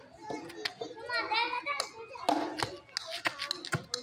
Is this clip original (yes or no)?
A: yes